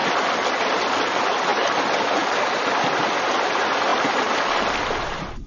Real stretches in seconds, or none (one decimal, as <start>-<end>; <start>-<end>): 0.0-5.5